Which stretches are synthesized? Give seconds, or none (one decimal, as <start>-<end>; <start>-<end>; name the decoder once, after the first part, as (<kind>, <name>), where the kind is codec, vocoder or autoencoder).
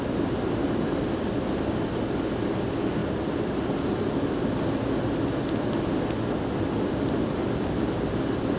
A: none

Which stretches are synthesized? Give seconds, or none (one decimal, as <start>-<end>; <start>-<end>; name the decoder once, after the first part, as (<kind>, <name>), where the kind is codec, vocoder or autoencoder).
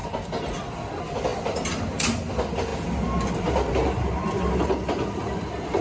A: 0.0-0.7 (vocoder, BigVGAN v2)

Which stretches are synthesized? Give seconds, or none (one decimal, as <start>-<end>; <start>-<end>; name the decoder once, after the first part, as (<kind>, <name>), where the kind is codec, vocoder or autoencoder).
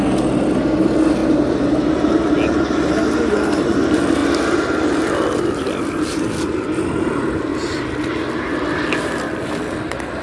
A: 1.2-1.9 (vocoder, BigVGAN v2)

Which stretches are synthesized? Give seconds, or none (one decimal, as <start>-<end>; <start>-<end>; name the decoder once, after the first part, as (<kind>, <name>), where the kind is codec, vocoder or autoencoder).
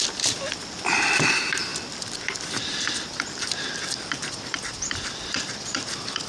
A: 0.0-6.3 (vocoder, BigVGAN v2)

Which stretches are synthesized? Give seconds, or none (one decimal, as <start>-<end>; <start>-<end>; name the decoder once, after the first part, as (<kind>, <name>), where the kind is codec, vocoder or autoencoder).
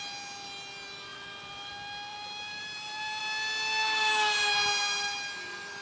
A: 1.1-1.7 (vocoder, BigVGAN v2); 2.1-3.2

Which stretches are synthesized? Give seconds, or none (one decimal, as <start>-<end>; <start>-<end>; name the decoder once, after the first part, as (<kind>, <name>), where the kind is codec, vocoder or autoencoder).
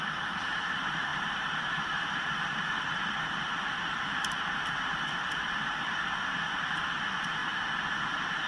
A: 1.1-5.8 (vocoder, BigVGAN v2)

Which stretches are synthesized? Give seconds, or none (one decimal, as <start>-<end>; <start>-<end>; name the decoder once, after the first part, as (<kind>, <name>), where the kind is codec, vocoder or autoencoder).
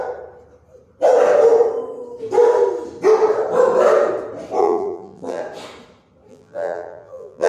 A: 4.6-5.4 (vocoder, BigVGAN v2); 6.3-7.5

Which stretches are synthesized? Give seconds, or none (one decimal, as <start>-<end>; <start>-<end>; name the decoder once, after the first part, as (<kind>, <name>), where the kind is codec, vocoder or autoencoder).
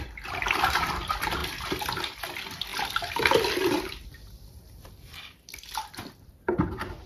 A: 0.0-1.4 (vocoder, BigVGAN v2); 2.0-7.1